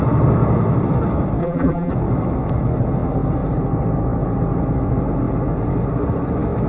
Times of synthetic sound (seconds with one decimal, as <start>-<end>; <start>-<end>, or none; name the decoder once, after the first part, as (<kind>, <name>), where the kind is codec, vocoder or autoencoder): 1.4-1.9 (vocoder, BigVGAN v2)